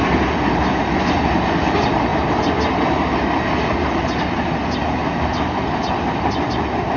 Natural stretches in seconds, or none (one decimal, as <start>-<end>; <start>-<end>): 0.0-7.0